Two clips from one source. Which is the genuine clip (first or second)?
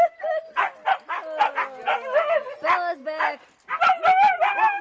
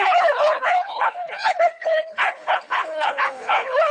first